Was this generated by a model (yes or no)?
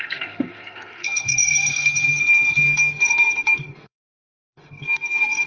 yes